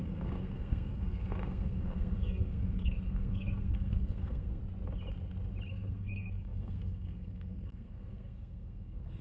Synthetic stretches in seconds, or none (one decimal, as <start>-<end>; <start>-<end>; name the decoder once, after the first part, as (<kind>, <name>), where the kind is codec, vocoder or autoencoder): 0.0-4.6 (codec, SNAC); 5.7-9.2